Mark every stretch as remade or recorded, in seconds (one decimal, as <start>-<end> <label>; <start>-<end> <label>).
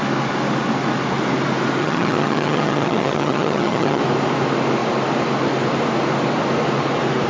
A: 0.0-1.8 recorded; 1.8-4.0 remade; 4.0-7.3 recorded